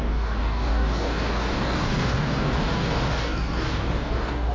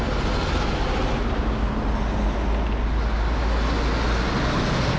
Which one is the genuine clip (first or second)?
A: second